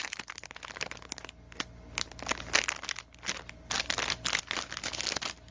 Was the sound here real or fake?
real